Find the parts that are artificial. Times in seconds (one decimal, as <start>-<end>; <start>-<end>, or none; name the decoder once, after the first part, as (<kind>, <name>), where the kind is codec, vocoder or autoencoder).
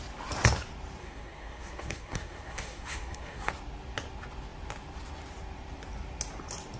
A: 1.0-3.5 (codec, SNAC)